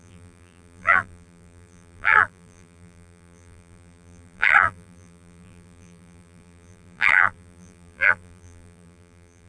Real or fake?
fake